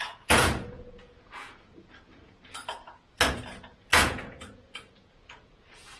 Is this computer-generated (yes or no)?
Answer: yes